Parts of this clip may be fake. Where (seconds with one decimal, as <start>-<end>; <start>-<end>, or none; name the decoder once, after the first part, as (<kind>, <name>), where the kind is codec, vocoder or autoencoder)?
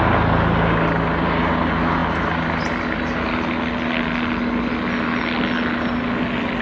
none